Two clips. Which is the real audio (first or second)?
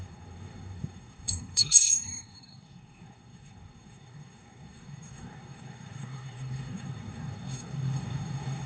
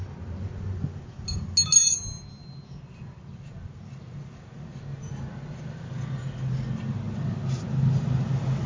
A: second